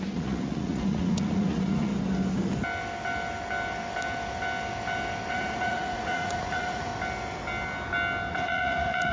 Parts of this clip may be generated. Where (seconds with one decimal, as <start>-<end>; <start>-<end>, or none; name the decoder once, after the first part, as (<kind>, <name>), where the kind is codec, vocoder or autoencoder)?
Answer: 0.0-1.9 (vocoder, Vocos); 5.3-6.9; 8.3-9.1